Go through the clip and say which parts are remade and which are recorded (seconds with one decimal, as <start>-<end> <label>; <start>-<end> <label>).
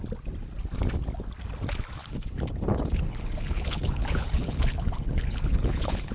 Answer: 0.0-2.0 recorded; 2.0-6.1 remade